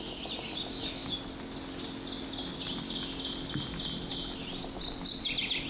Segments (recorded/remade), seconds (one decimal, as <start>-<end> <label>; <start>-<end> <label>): 0.0-5.7 recorded